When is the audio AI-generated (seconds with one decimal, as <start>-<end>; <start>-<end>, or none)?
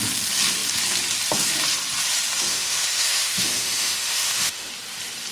2.5-4.7